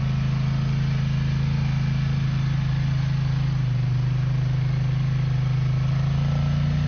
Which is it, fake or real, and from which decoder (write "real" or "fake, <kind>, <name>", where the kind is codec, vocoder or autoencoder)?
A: real